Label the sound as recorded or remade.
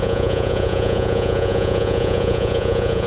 remade